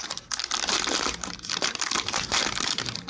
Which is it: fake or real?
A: fake